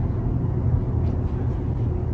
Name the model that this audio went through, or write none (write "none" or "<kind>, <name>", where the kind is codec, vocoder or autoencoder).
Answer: none